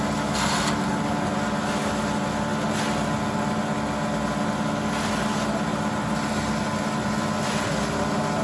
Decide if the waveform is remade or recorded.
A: recorded